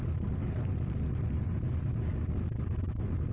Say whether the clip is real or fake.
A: real